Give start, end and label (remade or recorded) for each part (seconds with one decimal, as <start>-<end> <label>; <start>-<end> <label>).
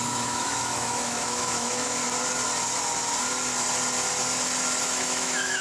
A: 0.0-2.0 remade; 2.0-4.8 recorded; 4.8-5.6 remade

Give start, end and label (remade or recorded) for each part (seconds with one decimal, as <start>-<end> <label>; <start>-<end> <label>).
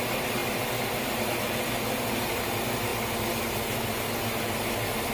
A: 0.0-0.4 remade; 0.4-1.0 recorded; 1.0-2.9 remade; 2.9-4.4 recorded; 4.4-5.1 remade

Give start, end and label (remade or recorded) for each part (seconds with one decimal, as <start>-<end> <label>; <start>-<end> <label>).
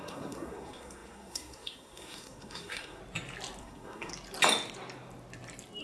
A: 0.0-3.0 remade; 3.0-3.6 recorded; 3.6-4.1 remade; 4.1-5.8 recorded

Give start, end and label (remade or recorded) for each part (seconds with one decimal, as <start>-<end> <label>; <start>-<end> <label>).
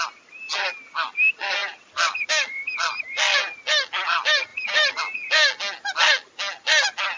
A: 0.0-1.6 recorded; 1.6-2.3 remade; 2.3-4.5 recorded; 4.5-5.0 remade; 5.0-7.2 recorded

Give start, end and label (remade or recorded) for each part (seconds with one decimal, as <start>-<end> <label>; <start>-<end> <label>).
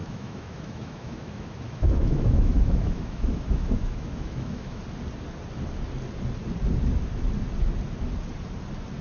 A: 0.0-4.8 remade; 4.8-9.0 recorded